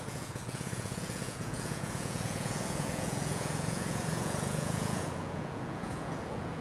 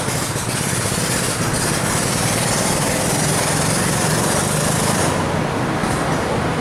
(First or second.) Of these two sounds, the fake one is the first